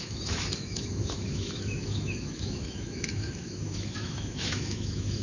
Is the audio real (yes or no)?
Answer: no